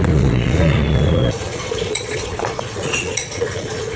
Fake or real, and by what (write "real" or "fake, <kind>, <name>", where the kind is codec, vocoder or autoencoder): fake, vocoder, Vocos